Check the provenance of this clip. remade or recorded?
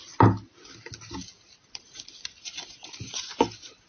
recorded